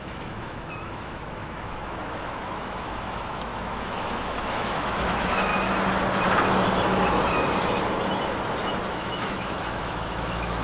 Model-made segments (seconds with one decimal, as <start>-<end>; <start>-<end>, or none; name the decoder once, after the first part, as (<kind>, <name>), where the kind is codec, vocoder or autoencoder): 0.0-5.5 (autoencoder, DAC-VAE); 8.9-10.6